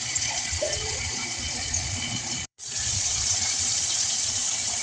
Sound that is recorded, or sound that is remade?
remade